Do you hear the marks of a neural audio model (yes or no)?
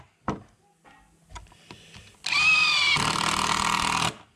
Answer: no